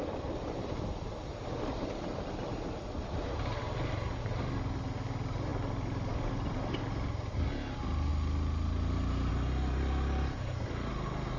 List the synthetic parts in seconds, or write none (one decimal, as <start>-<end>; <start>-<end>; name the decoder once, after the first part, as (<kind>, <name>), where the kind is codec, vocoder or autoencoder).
none